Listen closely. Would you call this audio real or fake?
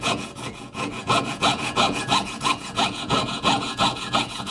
fake